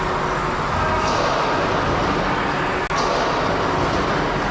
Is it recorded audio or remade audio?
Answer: recorded